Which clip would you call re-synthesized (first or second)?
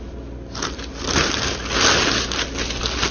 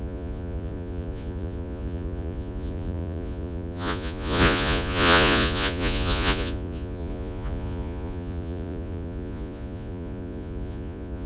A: second